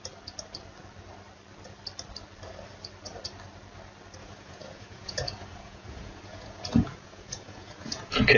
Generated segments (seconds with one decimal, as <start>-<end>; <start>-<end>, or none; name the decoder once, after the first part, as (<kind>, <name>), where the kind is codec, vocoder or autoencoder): 4.2-8.4 (vocoder, Vocos)